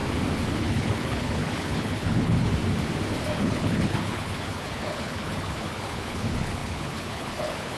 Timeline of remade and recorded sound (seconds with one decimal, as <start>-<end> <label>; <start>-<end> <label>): 0.0-0.6 recorded; 0.6-2.5 remade; 2.5-3.4 recorded; 3.4-7.8 remade